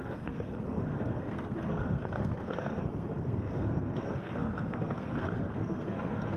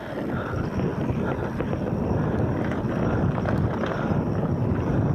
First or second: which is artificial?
first